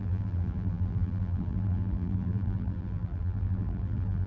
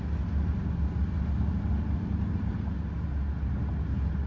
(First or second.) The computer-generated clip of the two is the first